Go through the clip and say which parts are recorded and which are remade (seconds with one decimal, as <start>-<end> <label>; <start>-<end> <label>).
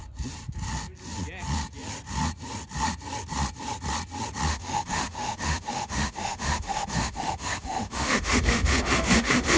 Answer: 0.0-4.5 recorded; 4.5-9.6 remade